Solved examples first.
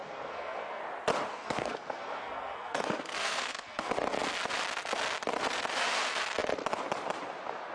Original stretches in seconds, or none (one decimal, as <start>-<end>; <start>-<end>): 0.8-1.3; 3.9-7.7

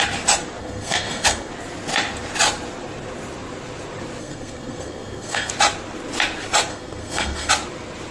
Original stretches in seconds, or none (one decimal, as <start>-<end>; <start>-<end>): 0.0-0.6; 1.5-4.2; 5.5-6.7; 7.5-8.1

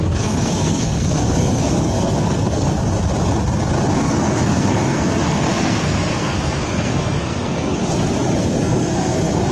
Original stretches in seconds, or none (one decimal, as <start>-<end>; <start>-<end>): 2.8-4.0; 7.8-8.4